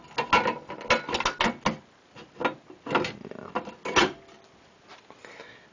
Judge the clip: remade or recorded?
recorded